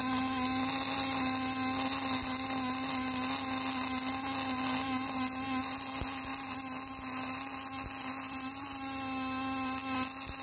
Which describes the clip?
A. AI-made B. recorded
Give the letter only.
B